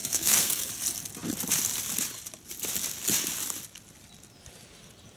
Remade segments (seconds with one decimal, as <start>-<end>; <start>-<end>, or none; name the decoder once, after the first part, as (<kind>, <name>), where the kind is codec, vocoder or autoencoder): 0.0-0.7 (codec, SNAC)